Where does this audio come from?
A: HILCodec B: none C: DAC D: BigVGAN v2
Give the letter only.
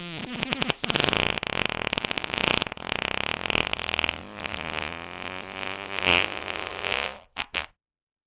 B